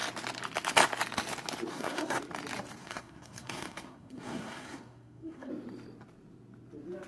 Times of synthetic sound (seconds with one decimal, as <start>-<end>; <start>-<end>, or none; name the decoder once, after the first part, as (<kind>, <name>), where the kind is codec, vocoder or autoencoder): 1.7-2.2 (codec, SNAC); 2.8-5.5